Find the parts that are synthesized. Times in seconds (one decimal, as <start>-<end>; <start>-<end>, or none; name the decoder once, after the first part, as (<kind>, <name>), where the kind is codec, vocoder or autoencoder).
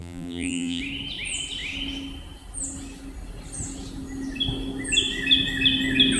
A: 0.0-0.8 (vocoder, BigVGAN v2)